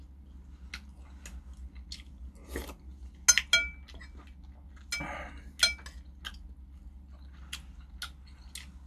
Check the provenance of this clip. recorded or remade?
recorded